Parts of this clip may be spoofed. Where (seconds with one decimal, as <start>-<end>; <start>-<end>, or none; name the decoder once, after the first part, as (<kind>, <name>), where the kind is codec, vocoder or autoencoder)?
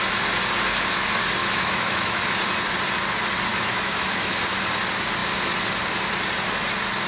1.4-2.2 (autoencoder, DAC-VAE); 3.5-4.4